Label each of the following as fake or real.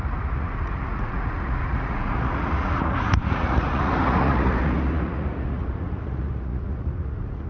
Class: fake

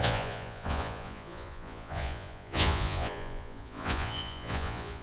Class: fake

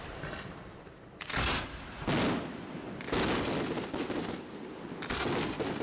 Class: real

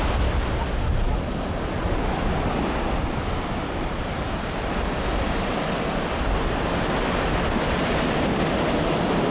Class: real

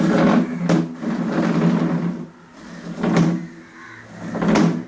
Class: real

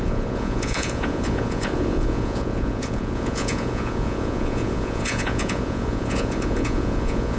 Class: fake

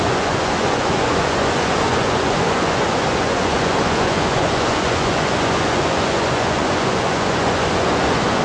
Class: fake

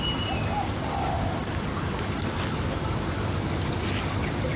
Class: real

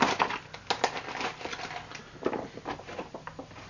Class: real